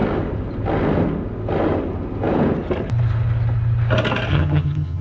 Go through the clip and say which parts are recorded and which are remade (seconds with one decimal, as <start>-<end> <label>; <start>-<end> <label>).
0.0-4.3 recorded; 4.3-5.0 remade